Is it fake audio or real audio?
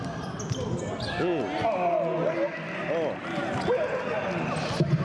real